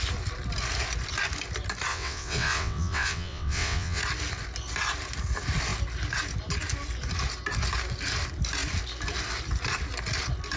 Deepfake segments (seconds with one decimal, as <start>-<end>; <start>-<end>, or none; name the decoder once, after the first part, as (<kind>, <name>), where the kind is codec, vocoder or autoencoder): 1.9-4.0 (vocoder, WaveNeXt)